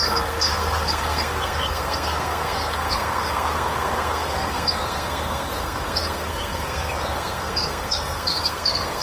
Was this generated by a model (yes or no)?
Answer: yes